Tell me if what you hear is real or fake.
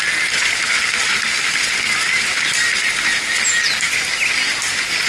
real